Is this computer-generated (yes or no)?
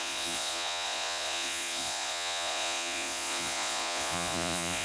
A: yes